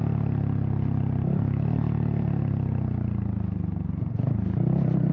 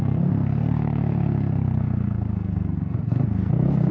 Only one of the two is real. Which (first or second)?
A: first